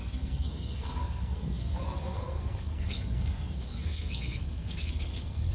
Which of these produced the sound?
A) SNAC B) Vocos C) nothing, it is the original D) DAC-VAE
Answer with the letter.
A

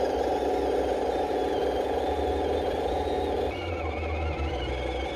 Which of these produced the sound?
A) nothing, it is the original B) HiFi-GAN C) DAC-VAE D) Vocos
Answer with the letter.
A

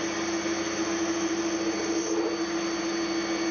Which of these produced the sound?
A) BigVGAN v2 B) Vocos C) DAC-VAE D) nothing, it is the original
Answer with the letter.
D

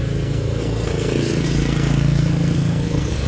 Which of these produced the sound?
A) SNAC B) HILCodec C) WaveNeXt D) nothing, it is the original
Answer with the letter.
A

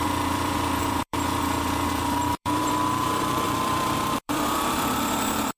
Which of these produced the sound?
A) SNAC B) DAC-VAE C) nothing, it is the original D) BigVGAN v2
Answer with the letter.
D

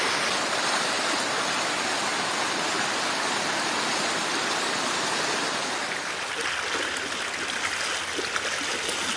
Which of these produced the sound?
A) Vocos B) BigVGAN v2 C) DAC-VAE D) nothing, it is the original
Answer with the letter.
D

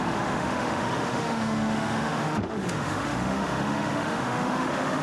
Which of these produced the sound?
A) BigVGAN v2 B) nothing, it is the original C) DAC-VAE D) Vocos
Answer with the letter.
C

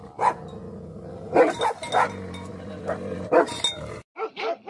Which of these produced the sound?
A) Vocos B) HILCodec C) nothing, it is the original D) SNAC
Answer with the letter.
C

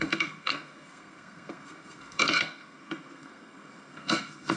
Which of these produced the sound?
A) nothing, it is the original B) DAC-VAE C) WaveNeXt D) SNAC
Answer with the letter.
D